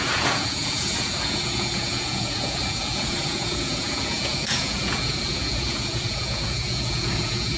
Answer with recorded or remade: remade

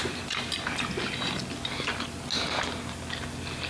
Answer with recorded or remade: recorded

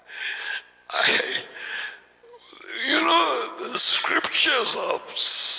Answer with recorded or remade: recorded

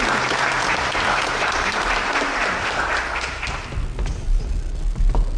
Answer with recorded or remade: recorded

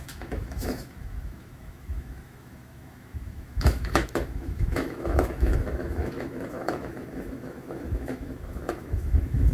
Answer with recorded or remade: remade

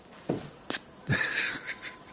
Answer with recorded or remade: remade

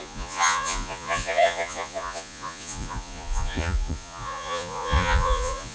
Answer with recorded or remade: remade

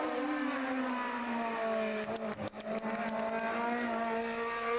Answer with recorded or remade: recorded